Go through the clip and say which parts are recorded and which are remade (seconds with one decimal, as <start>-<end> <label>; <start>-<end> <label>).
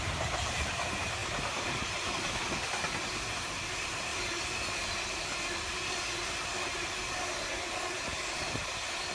0.0-1.2 remade; 1.2-3.0 recorded; 3.0-4.1 remade; 4.1-6.2 recorded; 6.2-9.1 remade